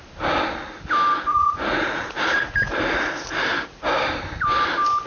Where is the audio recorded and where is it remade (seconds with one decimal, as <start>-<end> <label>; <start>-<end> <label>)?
0.0-1.3 recorded; 1.3-4.0 remade; 4.0-5.1 recorded

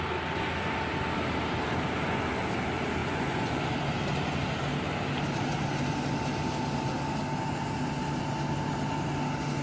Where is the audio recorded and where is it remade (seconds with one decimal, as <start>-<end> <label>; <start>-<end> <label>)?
0.0-3.0 recorded; 3.0-3.7 remade; 3.7-9.6 recorded

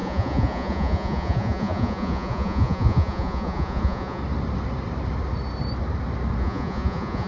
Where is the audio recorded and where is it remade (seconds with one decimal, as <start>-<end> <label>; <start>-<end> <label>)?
0.0-4.2 remade; 4.2-6.4 recorded; 6.4-7.3 remade

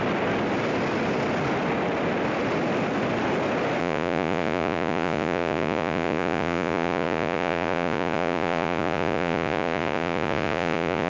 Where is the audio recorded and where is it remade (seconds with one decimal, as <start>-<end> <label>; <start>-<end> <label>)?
0.0-3.8 recorded; 3.8-11.1 remade

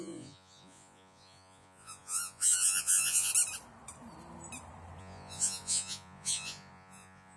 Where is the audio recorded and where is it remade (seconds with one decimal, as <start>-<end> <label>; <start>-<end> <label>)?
0.0-3.3 remade; 3.3-5.0 recorded; 5.0-7.4 remade

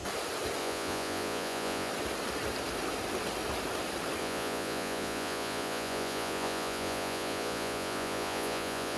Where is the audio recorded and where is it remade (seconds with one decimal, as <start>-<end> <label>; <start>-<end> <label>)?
0.0-0.6 recorded; 0.6-1.9 remade; 1.9-4.2 recorded; 4.2-9.0 remade